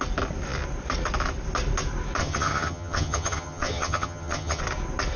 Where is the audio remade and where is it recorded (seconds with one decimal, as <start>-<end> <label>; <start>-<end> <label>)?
0.0-2.2 recorded; 2.2-4.6 remade; 4.6-5.2 recorded